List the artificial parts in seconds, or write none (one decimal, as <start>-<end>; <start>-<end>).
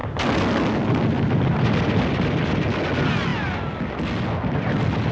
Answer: none